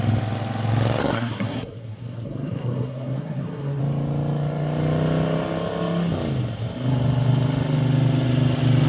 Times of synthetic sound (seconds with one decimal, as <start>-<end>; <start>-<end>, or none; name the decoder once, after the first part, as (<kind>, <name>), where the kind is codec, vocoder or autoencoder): 1.0-3.8 (codec, SNAC)

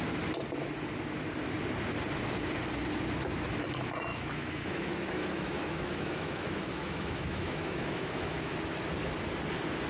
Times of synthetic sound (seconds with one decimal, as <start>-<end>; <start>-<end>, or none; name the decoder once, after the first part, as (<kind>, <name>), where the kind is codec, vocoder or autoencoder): 4.1-8.5 (autoencoder, DAC-VAE)

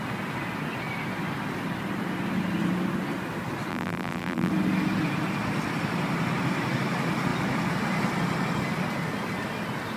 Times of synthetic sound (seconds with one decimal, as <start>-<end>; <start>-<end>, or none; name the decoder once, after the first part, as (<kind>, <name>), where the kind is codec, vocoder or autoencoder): 3.7-4.5 (vocoder, BigVGAN v2)

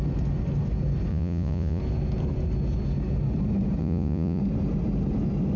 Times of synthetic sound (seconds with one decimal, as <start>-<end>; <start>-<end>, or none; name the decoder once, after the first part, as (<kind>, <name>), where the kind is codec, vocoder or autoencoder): 1.1-1.8 (vocoder, Vocos); 3.8-4.4

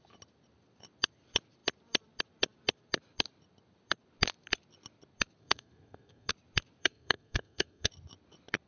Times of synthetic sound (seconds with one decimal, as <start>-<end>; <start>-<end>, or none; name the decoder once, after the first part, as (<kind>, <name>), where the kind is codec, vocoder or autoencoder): 5.4-6.3 (codec, SNAC); 6.8-7.9

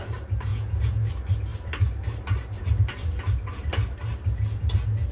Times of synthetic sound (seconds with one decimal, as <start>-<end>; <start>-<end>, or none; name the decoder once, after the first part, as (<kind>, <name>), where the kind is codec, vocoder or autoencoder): 0.5-1.1 (vocoder, Vocos)